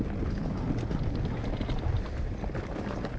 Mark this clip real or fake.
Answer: real